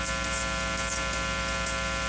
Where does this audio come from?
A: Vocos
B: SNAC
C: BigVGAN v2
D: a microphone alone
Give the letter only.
C